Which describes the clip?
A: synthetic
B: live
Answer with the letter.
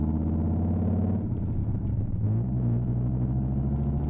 B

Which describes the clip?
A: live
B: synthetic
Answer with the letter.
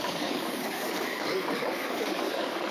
B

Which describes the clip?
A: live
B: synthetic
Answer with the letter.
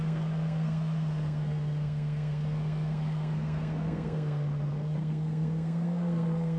B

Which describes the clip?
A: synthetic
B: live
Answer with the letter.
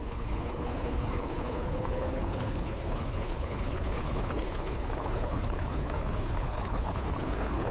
A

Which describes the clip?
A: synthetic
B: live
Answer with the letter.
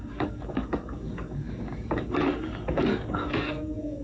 A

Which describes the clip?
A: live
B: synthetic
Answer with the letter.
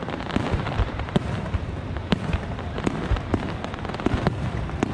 B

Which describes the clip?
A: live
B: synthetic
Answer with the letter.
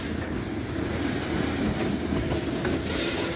A